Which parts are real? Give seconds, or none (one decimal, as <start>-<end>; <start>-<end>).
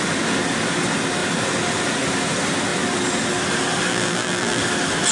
0.0-3.9; 4.6-5.1